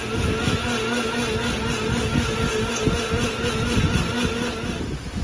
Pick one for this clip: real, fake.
real